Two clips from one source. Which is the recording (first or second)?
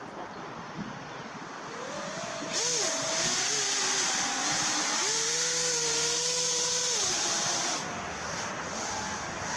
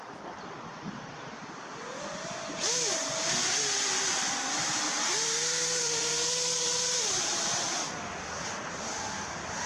first